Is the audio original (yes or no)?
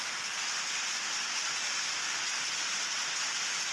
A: yes